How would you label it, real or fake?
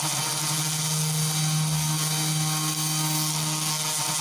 real